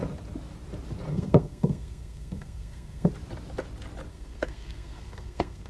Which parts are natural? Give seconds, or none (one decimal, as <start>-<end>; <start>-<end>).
0.0-1.1; 3.1-4.1